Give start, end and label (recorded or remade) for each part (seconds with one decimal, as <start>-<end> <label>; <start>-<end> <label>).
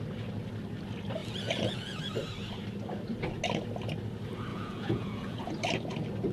0.0-1.2 recorded; 1.2-2.0 remade; 2.0-4.5 recorded; 4.5-5.5 remade; 5.5-6.3 recorded